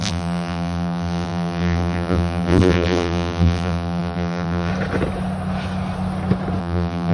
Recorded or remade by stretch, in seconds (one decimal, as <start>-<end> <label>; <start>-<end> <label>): 0.0-4.7 remade; 4.7-6.6 recorded; 6.6-7.1 remade